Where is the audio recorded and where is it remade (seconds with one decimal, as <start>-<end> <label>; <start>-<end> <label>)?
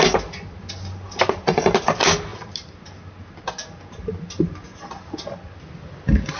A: 0.0-6.4 recorded